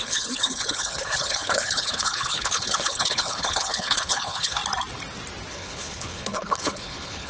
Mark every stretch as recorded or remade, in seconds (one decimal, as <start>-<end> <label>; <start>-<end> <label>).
0.0-4.6 remade; 4.6-5.5 recorded; 5.5-7.3 remade